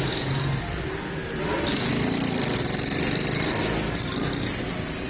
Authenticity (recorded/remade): recorded